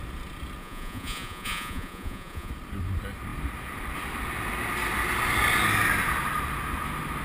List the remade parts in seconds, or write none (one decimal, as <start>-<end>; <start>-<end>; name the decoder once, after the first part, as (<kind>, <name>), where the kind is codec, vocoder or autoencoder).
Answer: 0.6-2.5 (vocoder, Vocos)